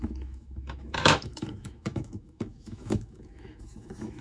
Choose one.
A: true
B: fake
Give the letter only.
B